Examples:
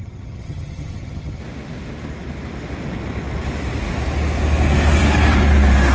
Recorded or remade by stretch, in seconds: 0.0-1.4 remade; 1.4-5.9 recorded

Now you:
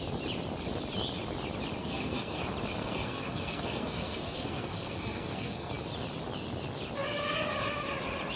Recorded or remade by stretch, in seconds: 0.0-1.8 recorded; 1.8-2.4 remade; 2.4-2.8 recorded; 2.8-5.7 remade; 5.7-8.4 recorded

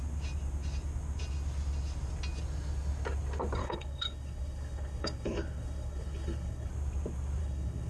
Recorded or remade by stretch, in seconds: 0.0-3.6 recorded; 3.6-6.7 remade; 6.7-7.4 recorded; 7.4-7.9 remade

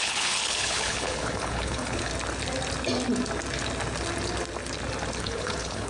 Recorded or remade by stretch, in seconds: 0.0-2.1 remade; 2.1-5.2 recorded; 5.2-5.9 remade

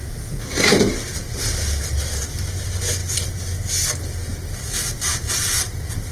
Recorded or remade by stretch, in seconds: 0.0-6.1 recorded